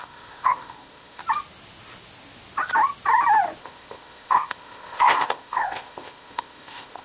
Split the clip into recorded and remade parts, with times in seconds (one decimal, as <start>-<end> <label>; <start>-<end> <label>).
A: 0.0-1.2 remade; 1.2-3.6 recorded; 3.6-7.0 remade